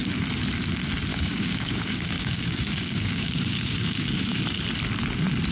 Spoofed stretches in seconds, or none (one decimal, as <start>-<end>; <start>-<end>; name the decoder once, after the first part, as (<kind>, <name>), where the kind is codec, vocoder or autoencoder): 1.1-4.4 (codec, DAC)

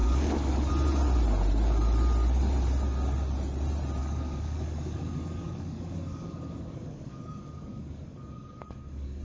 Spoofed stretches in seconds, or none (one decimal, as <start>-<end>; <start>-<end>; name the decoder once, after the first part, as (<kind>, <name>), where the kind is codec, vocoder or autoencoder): 0.0-0.7 (codec, DAC); 4.0-9.2

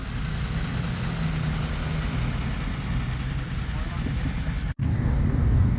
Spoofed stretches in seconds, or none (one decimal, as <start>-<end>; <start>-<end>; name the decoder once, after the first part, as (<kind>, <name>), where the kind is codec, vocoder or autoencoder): 4.8-5.8 (codec, DAC)

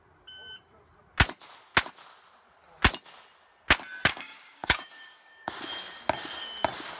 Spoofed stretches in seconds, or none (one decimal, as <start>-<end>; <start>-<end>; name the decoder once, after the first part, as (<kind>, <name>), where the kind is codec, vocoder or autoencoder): 4.1-5.5 (codec, DAC)

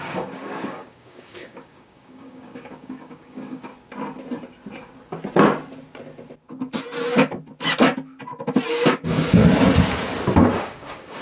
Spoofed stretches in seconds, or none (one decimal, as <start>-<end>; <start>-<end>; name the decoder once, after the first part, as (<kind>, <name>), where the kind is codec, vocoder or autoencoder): 0.0-3.7 (codec, DAC); 8.7-9.4; 10.4-11.2

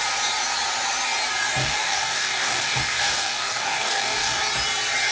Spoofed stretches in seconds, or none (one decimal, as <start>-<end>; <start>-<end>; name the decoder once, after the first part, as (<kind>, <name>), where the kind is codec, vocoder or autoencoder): 1.6-4.4 (codec, DAC)